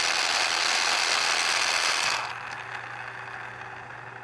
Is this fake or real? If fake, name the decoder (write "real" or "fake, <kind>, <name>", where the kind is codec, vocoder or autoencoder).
real